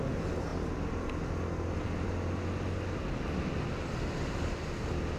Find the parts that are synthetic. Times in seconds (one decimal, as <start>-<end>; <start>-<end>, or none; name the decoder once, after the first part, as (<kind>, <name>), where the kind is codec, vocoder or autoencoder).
none